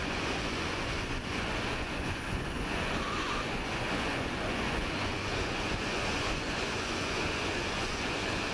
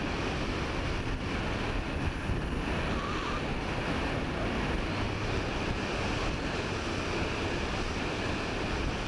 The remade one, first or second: first